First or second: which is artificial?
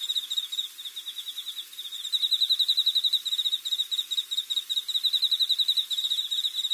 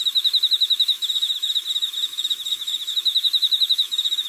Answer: second